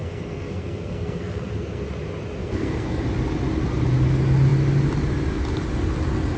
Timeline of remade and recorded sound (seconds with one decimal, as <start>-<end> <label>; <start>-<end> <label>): 0.0-1.8 remade; 1.8-2.4 recorded; 2.4-3.0 remade; 3.0-6.4 recorded

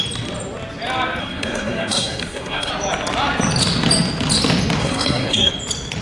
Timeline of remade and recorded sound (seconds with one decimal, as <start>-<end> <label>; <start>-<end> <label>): 0.0-1.2 recorded; 1.2-2.7 remade; 2.7-4.8 recorded; 4.8-5.5 remade; 5.5-6.0 recorded

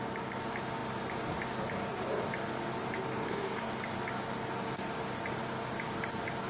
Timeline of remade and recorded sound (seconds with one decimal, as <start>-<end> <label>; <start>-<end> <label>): 0.0-3.1 recorded; 3.1-3.7 remade; 3.7-6.5 recorded

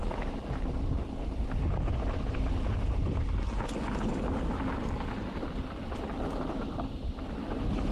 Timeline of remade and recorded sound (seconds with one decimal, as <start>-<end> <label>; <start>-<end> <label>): 0.0-7.9 recorded

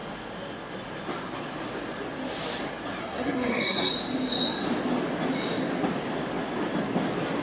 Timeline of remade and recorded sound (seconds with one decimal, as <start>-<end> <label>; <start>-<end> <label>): 0.0-3.0 recorded; 3.0-3.9 remade; 3.9-7.4 recorded

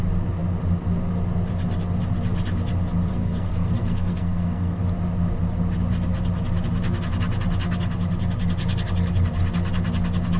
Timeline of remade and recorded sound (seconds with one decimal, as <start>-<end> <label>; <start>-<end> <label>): 0.0-3.1 recorded; 3.1-4.8 remade; 4.8-10.4 recorded